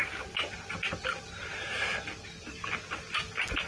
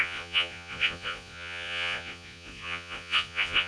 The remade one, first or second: second